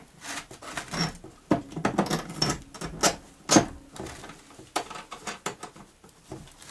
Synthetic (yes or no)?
no